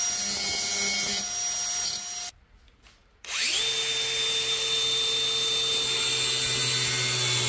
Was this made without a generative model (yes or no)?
yes